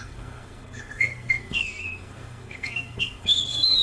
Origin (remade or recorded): remade